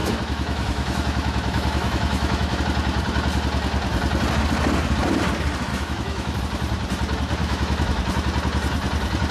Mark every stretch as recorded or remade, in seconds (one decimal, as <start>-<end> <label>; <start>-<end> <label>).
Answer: 0.0-2.6 remade; 2.6-5.7 recorded; 5.7-6.4 remade; 6.4-7.4 recorded; 7.4-8.0 remade; 8.0-9.3 recorded